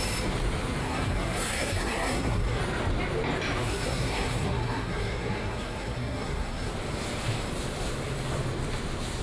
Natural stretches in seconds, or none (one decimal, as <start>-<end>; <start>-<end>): 0.0-0.8; 2.6-3.6; 6.7-9.2